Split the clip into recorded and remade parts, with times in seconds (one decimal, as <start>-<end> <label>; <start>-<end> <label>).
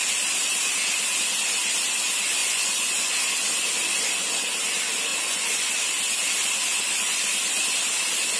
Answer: 0.0-2.4 recorded; 2.4-3.1 remade; 3.1-5.1 recorded; 5.1-5.7 remade; 5.7-6.7 recorded; 6.7-7.2 remade; 7.2-8.4 recorded